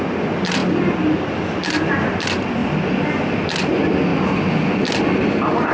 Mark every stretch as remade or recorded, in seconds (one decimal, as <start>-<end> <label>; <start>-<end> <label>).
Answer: 0.0-5.7 recorded